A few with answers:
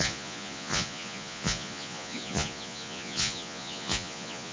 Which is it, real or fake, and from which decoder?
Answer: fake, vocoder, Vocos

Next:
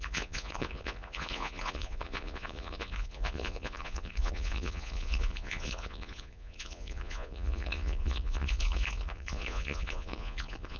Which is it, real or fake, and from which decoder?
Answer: fake, vocoder, Vocos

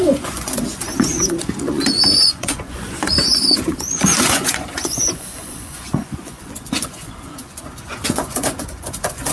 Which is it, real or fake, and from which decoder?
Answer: fake, vocoder, Vocos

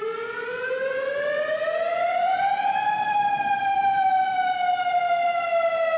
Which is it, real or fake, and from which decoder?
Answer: real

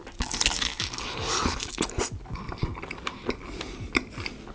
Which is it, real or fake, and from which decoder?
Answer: real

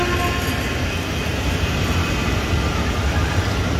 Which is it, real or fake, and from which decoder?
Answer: real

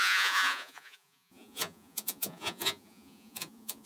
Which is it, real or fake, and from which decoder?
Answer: fake, vocoder, Vocos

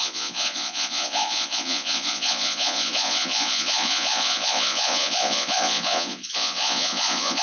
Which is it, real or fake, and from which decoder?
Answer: fake, vocoder, Vocos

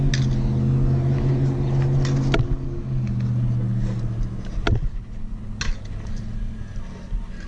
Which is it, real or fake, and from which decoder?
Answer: real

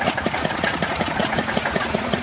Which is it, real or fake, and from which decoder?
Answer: fake, vocoder, Vocos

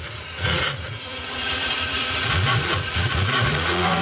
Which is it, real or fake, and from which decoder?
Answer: fake, vocoder, Vocos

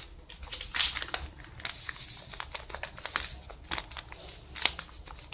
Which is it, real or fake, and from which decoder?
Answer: real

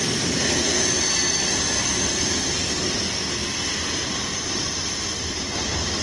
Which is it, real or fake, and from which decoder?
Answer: real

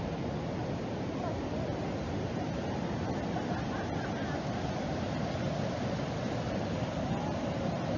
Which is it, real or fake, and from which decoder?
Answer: real